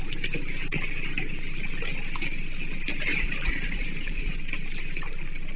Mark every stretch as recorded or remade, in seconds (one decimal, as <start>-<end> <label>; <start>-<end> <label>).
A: 0.0-3.1 recorded; 3.1-4.4 remade; 4.4-5.6 recorded